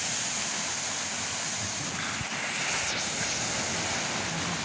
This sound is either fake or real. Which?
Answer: real